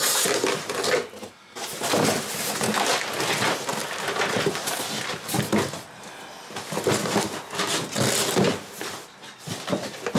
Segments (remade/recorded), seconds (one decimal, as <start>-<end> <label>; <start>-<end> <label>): 0.0-10.2 recorded